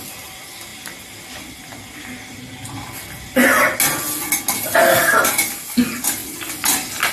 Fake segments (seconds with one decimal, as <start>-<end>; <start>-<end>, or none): none